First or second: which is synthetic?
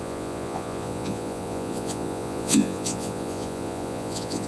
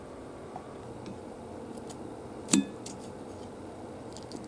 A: first